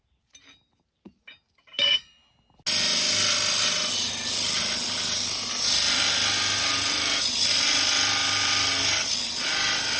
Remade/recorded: recorded